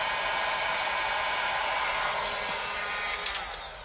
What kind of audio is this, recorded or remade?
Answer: recorded